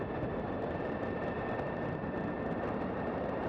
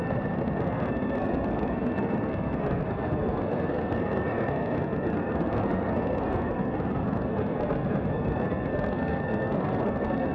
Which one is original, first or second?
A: first